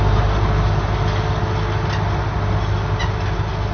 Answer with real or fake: real